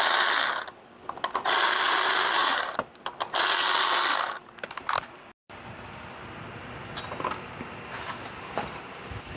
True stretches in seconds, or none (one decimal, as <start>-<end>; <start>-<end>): 0.0-9.4